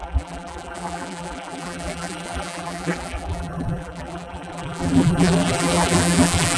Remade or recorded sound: remade